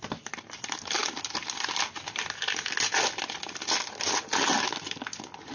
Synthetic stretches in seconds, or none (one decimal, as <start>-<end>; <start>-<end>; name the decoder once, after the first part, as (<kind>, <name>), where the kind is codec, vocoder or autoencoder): none